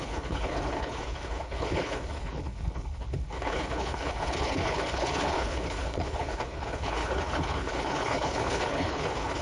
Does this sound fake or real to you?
fake